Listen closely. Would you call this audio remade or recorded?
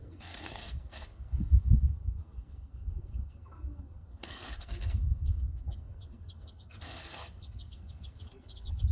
remade